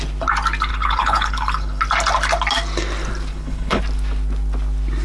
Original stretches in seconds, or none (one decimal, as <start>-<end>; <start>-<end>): 0.0-0.7; 1.8-3.3; 3.8-5.0